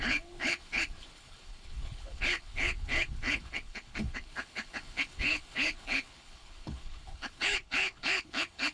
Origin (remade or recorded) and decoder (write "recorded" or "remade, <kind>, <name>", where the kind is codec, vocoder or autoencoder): remade, codec, HILCodec